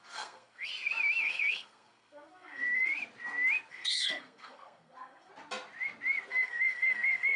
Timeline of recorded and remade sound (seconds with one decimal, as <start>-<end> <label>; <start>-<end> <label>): 0.0-0.7 remade; 0.7-1.2 recorded; 1.2-2.9 remade; 2.9-3.7 recorded; 3.7-5.3 remade; 5.3-6.3 recorded; 6.3-7.4 remade